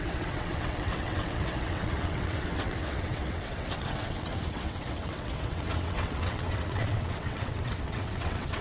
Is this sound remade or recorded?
remade